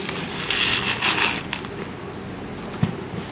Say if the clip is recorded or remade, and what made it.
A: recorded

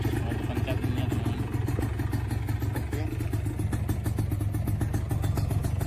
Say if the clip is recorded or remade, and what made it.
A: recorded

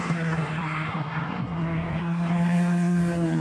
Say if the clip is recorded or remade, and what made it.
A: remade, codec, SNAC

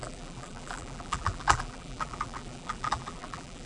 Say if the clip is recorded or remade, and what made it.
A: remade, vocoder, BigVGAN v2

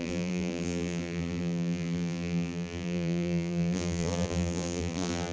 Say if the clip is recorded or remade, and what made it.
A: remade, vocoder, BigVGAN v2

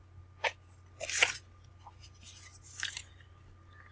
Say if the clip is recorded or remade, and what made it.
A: recorded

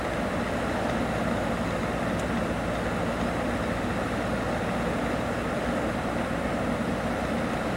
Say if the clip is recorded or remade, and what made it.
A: recorded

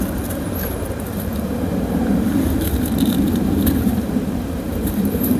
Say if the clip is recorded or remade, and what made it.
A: remade, vocoder, BigVGAN v2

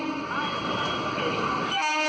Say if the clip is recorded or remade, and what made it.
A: recorded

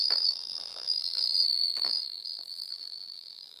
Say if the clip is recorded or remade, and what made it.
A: remade, vocoder, BigVGAN v2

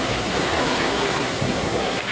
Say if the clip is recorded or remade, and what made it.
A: remade, codec, SNAC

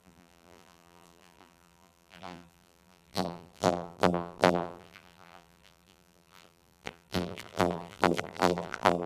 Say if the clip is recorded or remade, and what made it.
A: remade, vocoder, BigVGAN v2